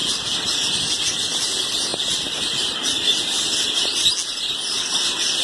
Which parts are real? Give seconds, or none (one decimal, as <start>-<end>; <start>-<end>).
0.0-5.4